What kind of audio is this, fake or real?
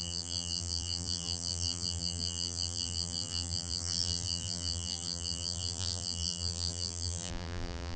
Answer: fake